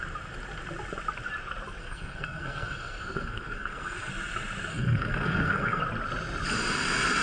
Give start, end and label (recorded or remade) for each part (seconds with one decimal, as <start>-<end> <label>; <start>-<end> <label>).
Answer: 0.0-1.8 recorded; 1.8-4.1 remade; 4.1-4.7 recorded; 4.7-5.8 remade; 5.8-7.2 recorded